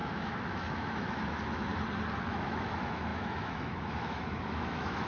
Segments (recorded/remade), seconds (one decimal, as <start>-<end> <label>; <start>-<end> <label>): 0.0-1.7 remade; 1.7-2.2 recorded; 2.2-5.1 remade